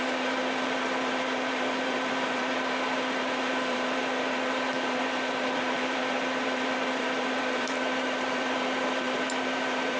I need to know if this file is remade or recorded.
remade